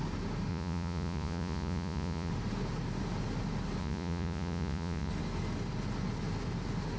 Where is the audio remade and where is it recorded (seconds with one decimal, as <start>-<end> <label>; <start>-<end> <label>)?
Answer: 0.0-0.5 recorded; 0.5-2.3 remade; 2.3-3.8 recorded; 3.8-5.1 remade; 5.1-7.0 recorded